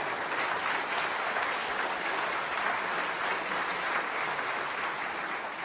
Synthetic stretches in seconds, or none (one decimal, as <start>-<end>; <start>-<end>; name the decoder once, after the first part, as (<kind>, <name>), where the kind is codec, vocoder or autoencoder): none